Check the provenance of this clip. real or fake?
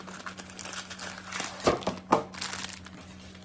real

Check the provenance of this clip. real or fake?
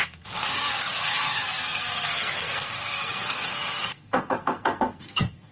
fake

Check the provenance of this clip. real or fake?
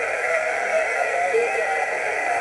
fake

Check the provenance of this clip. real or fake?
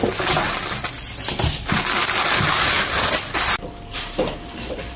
real